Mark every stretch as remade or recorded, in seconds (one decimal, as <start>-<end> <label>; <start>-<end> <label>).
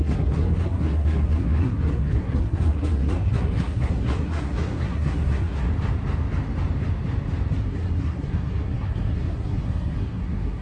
0.0-5.7 remade; 5.7-7.6 recorded; 7.6-10.6 remade